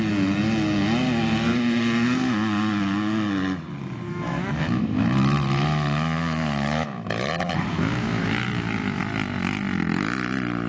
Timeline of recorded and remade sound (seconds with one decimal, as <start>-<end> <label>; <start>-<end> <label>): 0.0-4.1 recorded; 4.1-9.0 remade; 9.0-10.7 recorded